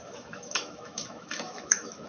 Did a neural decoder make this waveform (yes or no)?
yes